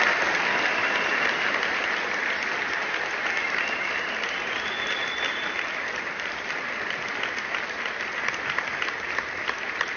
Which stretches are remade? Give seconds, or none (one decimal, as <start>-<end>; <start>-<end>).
none